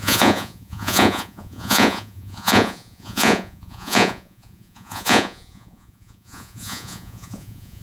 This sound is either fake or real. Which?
fake